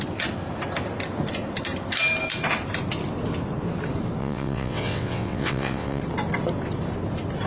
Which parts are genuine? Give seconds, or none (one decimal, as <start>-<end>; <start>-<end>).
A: 0.0-4.2; 6.0-7.5